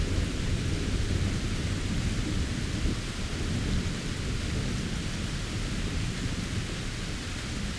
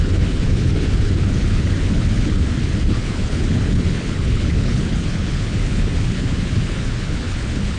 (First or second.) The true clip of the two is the first